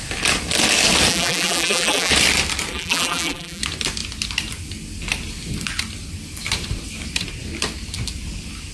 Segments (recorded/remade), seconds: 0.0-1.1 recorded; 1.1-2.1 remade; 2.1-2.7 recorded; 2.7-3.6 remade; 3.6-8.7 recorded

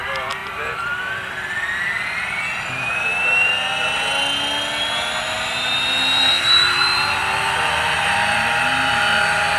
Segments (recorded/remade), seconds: 0.0-3.1 remade; 3.1-6.3 recorded; 6.3-9.6 remade